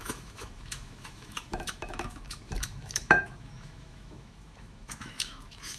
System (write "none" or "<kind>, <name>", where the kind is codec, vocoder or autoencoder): autoencoder, DAC-VAE